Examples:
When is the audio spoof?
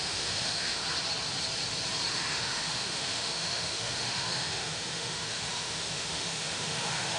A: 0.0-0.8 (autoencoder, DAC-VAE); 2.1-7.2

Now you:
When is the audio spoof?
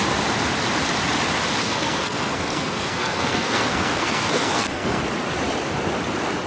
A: 1.6-5.0 (codec, SNAC)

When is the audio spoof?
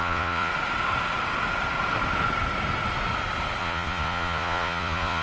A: 0.0-0.5 (vocoder, Vocos); 3.6-5.2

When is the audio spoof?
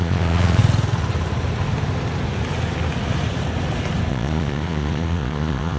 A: 0.0-0.6 (vocoder, Vocos); 4.1-5.8